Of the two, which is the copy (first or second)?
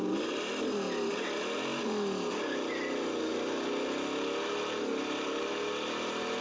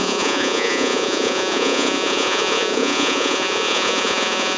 second